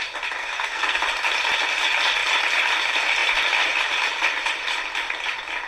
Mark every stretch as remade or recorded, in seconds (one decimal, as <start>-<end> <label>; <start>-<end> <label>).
0.0-0.4 recorded; 0.4-1.0 remade; 1.0-5.7 recorded